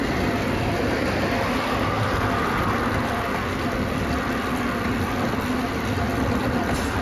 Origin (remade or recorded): recorded